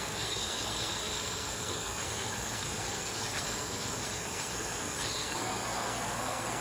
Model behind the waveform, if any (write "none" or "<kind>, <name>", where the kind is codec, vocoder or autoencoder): codec, SNAC